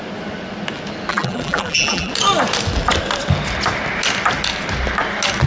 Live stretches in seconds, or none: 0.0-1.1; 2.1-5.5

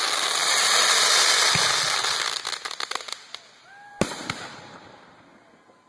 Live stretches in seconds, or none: 0.0-5.9

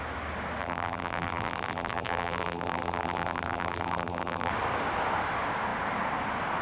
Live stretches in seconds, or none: 0.0-0.6; 4.5-6.6

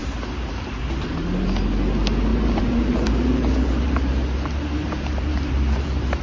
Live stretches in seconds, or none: 1.1-2.3

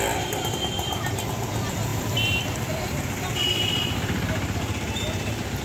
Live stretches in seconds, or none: none